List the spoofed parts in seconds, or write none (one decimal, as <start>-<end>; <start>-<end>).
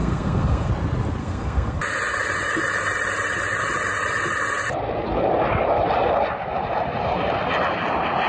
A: 0.0-0.7; 1.2-1.8